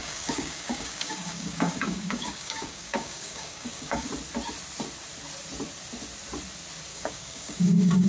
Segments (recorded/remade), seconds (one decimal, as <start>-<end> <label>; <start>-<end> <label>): 0.0-4.1 remade; 4.1-6.9 recorded; 6.9-8.1 remade